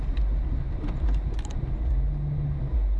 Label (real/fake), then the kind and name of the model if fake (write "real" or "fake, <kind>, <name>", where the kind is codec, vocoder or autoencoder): real